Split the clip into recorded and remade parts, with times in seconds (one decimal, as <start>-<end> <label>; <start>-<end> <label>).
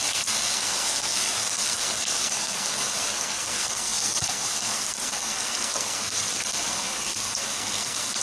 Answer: 0.0-8.2 remade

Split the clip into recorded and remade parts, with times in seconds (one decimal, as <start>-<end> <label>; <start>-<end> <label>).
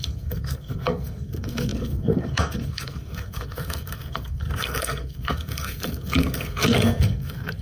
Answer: 0.0-7.6 remade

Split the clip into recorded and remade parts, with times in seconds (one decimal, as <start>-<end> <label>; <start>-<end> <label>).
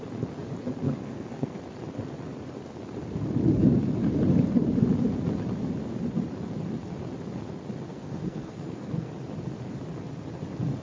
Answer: 0.0-1.0 recorded; 1.0-1.6 remade; 1.6-7.9 recorded; 7.9-9.1 remade; 9.1-10.8 recorded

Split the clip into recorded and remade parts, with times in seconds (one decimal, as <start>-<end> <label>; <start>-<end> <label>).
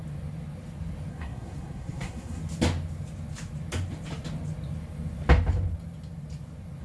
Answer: 0.0-1.1 recorded; 1.1-2.4 remade; 2.4-6.8 recorded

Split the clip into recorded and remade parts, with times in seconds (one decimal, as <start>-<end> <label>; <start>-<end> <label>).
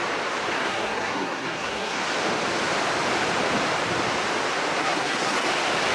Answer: 0.0-0.5 recorded; 0.5-2.0 remade; 2.0-4.8 recorded; 4.8-5.5 remade; 5.5-5.9 recorded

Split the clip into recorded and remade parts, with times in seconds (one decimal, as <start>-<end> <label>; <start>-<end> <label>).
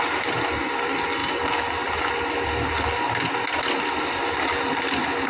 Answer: 0.0-5.3 recorded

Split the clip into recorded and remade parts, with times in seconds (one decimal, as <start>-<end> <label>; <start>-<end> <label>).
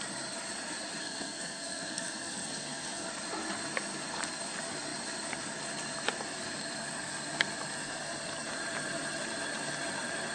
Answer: 0.0-1.0 recorded; 1.0-3.1 remade; 3.1-10.3 recorded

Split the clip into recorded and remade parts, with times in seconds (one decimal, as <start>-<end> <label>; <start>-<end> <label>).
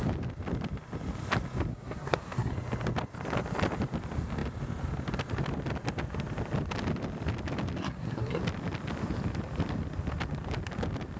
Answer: 0.0-1.7 recorded; 1.7-2.5 remade; 2.5-7.8 recorded; 7.8-8.4 remade; 8.4-11.2 recorded